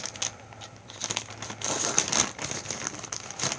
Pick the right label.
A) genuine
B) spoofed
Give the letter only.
A